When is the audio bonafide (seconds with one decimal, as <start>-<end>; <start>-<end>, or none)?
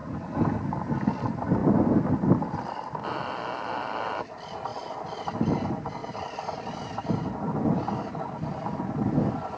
0.0-9.6